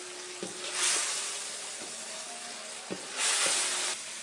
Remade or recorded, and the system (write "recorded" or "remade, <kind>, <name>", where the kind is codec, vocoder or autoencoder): recorded